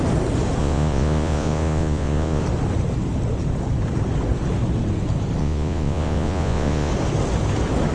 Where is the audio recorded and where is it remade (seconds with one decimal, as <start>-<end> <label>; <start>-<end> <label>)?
0.0-0.6 recorded; 0.6-2.4 remade; 2.4-5.4 recorded; 5.4-6.9 remade; 6.9-7.9 recorded